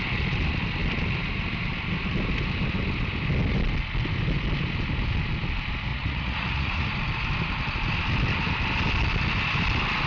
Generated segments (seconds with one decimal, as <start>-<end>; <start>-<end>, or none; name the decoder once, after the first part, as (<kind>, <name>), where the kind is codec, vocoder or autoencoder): 5.9-6.9 (vocoder, Vocos)